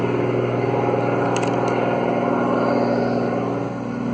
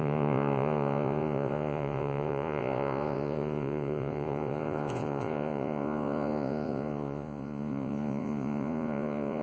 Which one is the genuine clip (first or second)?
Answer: first